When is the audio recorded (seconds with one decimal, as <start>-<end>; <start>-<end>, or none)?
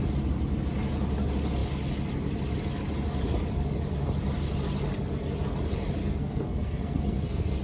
0.0-6.0